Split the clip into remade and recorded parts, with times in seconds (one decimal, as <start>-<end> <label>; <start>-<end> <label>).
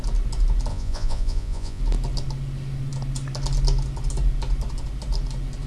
0.0-0.7 recorded; 0.7-1.8 remade; 1.8-5.7 recorded